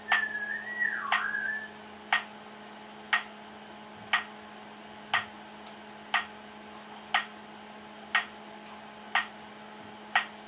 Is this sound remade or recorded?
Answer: recorded